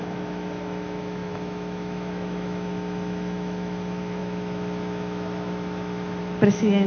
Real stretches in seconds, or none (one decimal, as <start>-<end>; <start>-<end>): none